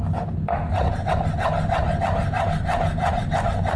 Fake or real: real